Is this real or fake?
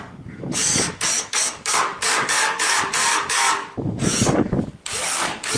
fake